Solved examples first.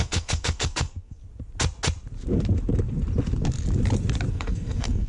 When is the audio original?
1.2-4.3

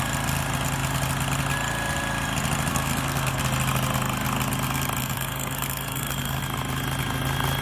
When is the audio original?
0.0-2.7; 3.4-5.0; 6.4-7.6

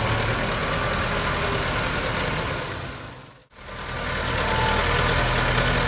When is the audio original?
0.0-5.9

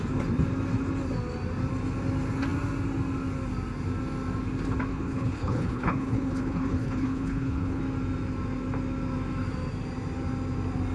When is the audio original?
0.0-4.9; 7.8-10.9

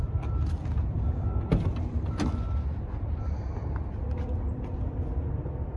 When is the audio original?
0.0-5.8